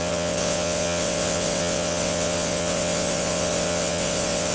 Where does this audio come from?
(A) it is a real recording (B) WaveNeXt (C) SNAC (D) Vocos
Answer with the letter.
B